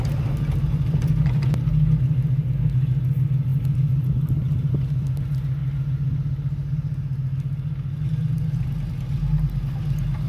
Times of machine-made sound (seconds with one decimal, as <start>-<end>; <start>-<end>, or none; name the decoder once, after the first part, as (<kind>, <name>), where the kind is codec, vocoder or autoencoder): none